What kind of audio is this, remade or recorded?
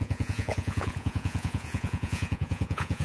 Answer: remade